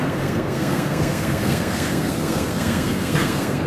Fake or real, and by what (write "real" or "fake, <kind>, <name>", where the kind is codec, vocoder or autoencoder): fake, codec, SNAC